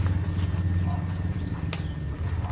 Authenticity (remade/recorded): recorded